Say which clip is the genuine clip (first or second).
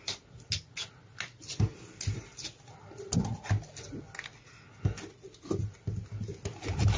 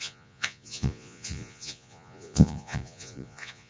first